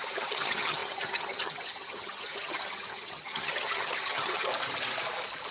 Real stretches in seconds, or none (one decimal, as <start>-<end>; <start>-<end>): 4.5-5.5